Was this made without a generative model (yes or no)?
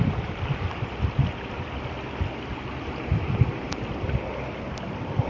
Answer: yes